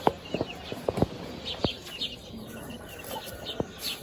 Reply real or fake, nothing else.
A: real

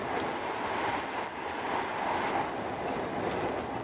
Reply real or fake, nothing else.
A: real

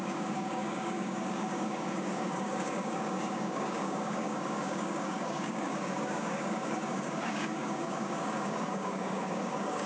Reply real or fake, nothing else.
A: fake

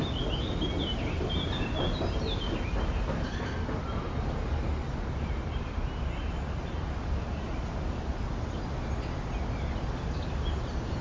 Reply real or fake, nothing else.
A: real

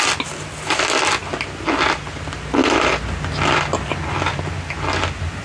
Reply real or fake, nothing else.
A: real